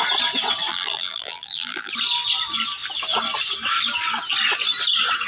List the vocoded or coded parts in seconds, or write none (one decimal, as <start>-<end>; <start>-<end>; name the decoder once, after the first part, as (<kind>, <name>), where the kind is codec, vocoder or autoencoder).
0.7-1.9 (vocoder, BigVGAN v2)